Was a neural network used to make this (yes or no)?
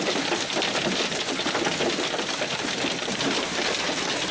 yes